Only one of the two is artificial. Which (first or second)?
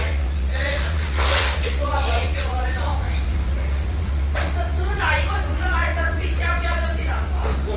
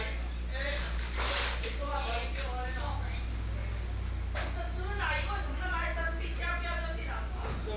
first